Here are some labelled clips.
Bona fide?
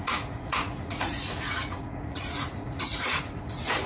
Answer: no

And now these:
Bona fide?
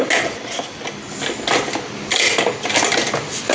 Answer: yes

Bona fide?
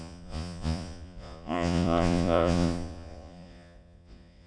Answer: no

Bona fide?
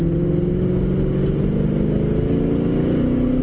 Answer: yes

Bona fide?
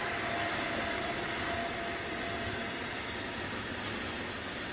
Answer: yes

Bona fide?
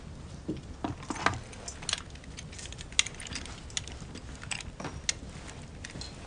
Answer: yes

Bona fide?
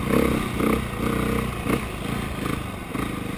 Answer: yes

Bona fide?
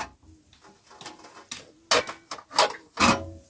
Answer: yes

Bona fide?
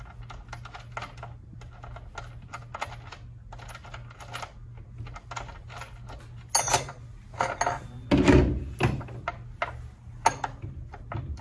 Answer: yes